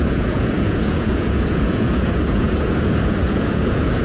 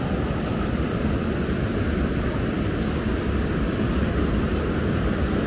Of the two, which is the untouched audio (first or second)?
second